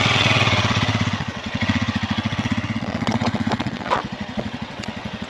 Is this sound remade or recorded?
remade